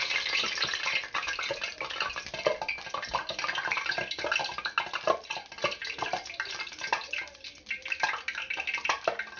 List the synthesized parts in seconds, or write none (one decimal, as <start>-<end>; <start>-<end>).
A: none